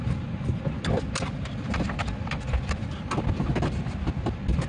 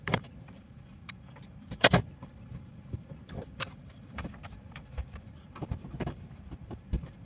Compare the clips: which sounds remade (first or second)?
second